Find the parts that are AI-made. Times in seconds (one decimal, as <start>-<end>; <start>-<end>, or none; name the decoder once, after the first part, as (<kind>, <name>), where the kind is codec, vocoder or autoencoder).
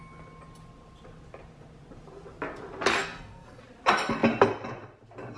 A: 3.0-3.6 (codec, SNAC)